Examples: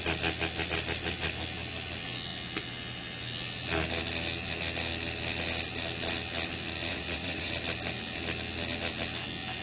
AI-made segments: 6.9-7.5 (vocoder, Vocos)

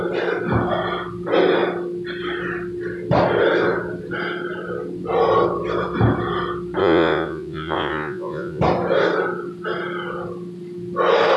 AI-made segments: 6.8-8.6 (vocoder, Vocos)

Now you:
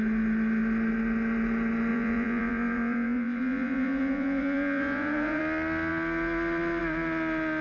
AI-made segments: 1.9-5.4 (vocoder, Vocos)